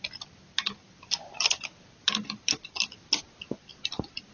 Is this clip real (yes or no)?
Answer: yes